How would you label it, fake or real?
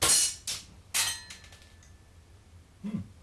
real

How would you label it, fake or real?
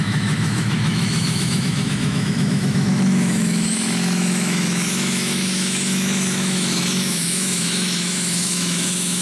fake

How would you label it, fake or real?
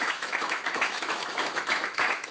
fake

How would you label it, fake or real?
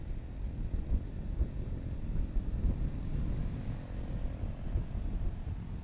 real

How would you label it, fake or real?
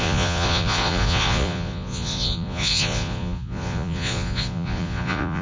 fake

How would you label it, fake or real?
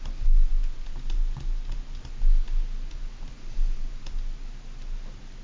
real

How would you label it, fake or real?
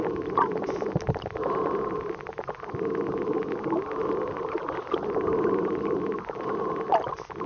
real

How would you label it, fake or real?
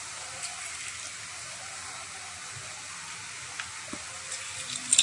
real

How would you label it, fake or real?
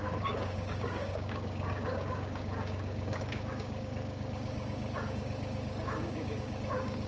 fake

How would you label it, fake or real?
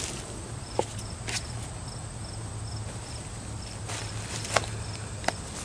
real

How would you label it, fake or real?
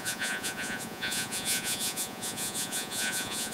fake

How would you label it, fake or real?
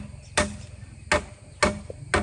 real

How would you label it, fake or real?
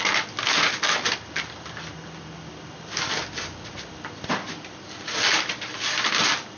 real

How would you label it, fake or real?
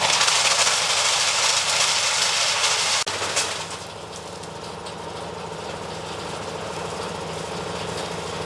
real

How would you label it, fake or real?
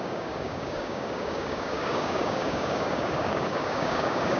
fake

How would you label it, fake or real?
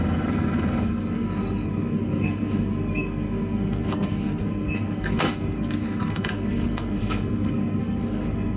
fake